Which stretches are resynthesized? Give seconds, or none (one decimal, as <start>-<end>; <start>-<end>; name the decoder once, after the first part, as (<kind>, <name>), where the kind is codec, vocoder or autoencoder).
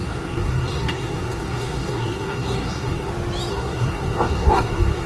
0.0-3.1 (codec, SNAC); 3.5-5.1